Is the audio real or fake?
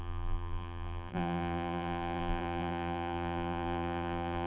fake